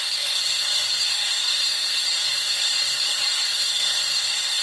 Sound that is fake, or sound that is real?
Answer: fake